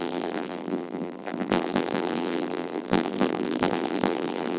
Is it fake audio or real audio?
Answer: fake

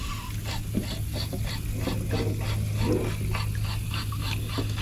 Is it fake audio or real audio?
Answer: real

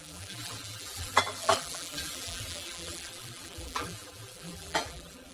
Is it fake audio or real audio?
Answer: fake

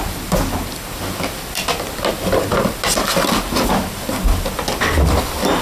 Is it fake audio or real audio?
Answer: real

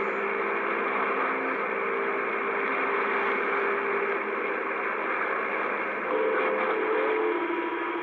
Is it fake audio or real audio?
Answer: real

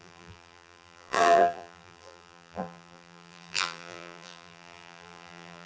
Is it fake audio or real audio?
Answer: fake